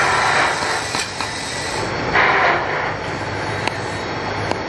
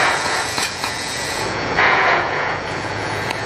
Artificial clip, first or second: second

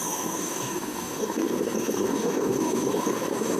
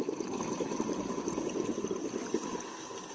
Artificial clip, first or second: first